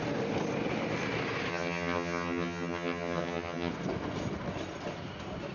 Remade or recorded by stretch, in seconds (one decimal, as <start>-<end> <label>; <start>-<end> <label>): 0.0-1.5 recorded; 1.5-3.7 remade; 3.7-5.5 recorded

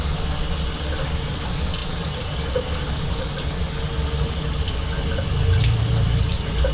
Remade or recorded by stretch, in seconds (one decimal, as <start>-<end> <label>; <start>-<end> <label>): 0.0-6.7 recorded

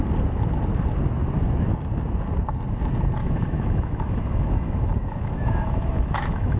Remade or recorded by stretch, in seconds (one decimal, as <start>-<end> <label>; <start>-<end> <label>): 0.0-3.2 recorded; 3.2-6.6 remade

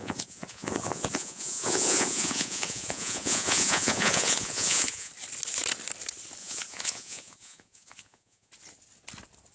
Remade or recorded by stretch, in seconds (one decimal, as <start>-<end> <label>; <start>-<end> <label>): 0.0-5.1 remade; 5.1-6.4 recorded; 6.4-8.5 remade; 8.5-9.5 recorded

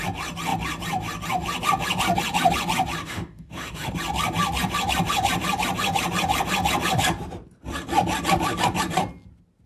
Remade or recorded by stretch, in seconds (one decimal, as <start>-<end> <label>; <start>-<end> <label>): 0.0-3.0 recorded; 3.0-3.9 remade; 3.9-9.7 recorded

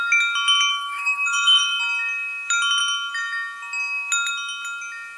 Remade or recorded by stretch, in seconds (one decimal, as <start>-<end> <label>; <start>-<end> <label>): 0.0-0.7 recorded; 0.7-1.8 remade; 1.8-5.2 recorded

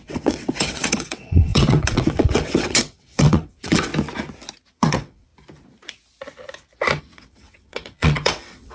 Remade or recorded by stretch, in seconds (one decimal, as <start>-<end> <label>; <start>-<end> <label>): 0.0-3.9 remade; 3.9-4.7 recorded; 4.7-5.3 remade; 5.3-7.0 recorded; 7.0-8.7 remade

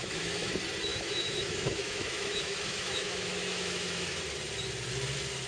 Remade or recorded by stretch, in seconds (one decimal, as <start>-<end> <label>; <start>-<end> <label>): 0.0-0.5 remade; 0.5-0.9 recorded; 0.9-4.2 remade; 4.2-5.5 recorded